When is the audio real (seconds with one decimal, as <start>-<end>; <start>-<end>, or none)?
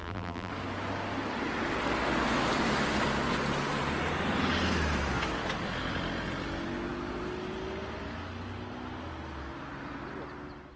0.5-10.8